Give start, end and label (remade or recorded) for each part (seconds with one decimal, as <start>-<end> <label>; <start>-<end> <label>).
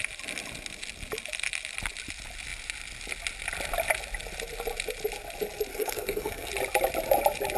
0.0-5.7 recorded; 5.7-6.5 remade; 6.5-7.6 recorded